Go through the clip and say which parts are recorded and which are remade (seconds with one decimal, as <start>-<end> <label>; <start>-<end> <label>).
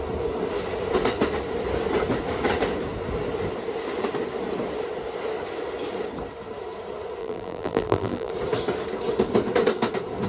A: 0.0-7.2 recorded; 7.2-8.3 remade; 8.3-10.3 recorded